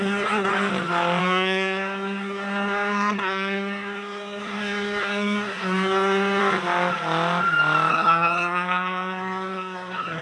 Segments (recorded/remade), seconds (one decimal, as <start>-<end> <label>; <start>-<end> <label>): 0.0-0.5 remade; 0.5-1.2 recorded; 1.2-6.4 remade; 6.4-7.9 recorded; 7.9-10.2 remade